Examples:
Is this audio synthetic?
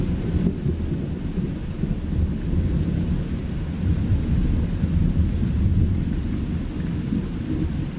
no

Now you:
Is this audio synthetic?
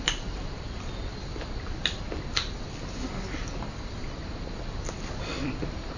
no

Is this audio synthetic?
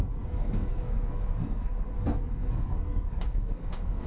yes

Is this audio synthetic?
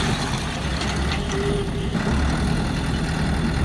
no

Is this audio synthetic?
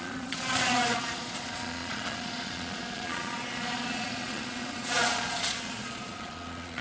yes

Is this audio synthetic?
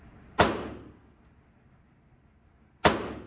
no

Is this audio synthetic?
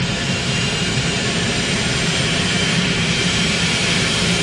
yes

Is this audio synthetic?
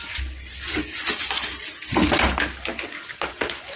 no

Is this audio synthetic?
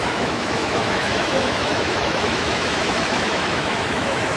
yes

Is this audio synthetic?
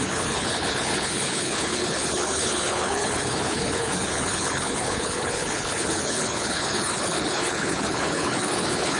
yes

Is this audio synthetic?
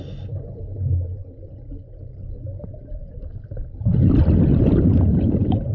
no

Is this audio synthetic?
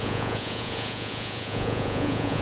yes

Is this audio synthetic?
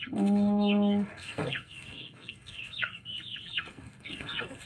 yes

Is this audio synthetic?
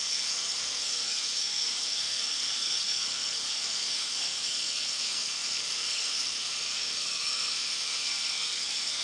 yes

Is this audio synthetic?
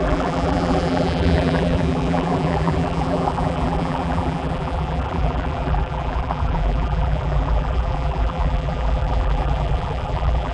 yes